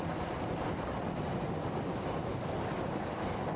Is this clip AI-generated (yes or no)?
no